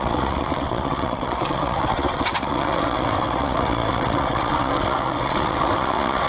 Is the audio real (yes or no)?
no